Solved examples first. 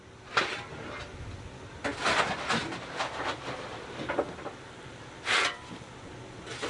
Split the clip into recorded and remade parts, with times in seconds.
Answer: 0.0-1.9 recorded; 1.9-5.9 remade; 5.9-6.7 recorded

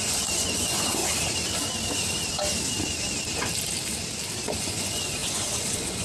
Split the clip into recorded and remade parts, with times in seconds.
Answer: 0.0-1.0 remade; 1.0-4.6 recorded; 4.6-6.0 remade